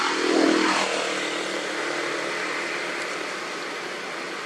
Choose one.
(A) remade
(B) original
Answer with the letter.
B